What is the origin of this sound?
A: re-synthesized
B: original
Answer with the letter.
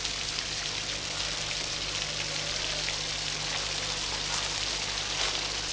B